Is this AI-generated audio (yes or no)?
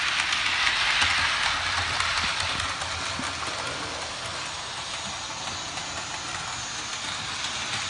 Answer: no